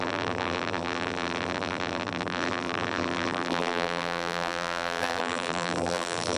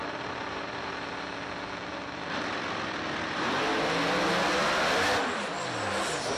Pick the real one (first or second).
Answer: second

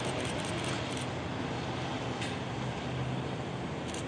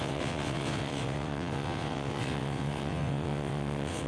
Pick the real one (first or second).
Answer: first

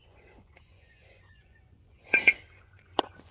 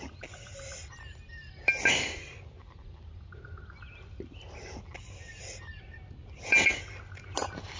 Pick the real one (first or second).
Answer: second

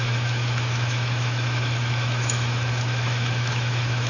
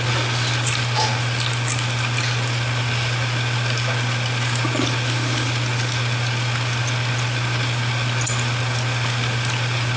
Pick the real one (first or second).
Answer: second